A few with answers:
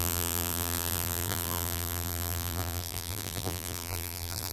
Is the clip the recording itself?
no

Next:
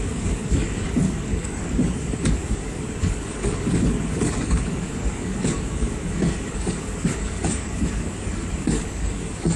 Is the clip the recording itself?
no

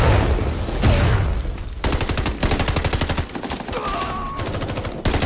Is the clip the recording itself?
yes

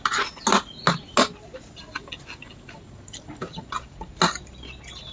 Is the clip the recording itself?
yes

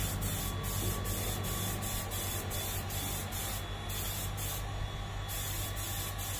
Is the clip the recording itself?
yes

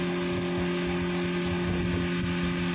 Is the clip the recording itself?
yes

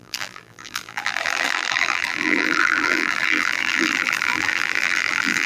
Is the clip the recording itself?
no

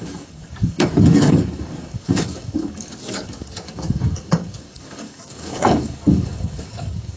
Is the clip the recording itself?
no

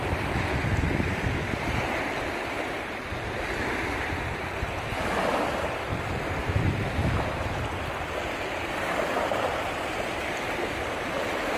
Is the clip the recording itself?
no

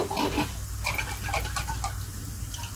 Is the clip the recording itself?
yes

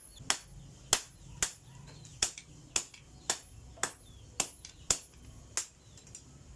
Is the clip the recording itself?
yes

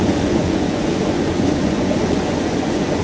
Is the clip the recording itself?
no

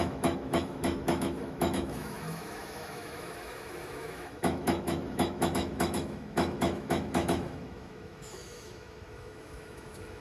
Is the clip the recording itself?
no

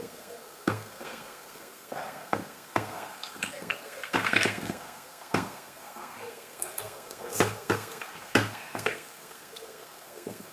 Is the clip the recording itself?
no